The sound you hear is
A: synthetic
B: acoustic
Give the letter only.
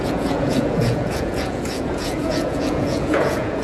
A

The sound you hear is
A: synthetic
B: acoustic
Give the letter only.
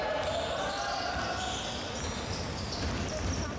B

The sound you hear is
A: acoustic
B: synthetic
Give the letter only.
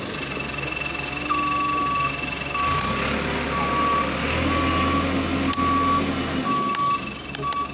A